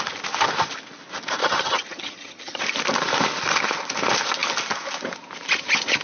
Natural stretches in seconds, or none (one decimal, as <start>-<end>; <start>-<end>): 0.0-1.4; 2.6-6.0